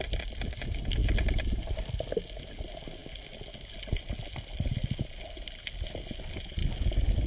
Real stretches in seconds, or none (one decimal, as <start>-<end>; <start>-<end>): 0.0-7.3

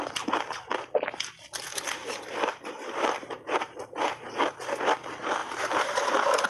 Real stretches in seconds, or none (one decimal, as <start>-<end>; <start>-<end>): 0.0-2.0; 4.3-5.4

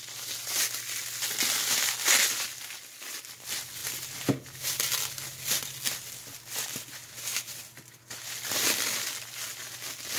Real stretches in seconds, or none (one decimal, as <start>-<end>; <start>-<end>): 0.0-10.2

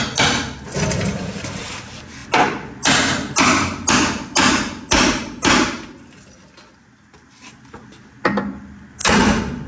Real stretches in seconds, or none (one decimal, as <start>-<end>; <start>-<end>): 0.0-9.7

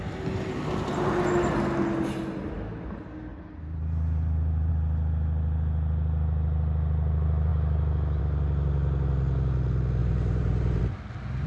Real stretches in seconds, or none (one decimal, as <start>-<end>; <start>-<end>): 0.0-3.3; 4.7-10.0; 10.8-11.5